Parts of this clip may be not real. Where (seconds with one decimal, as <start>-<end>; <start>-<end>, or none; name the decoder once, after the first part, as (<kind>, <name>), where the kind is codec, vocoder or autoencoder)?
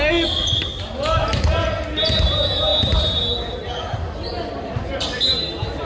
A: none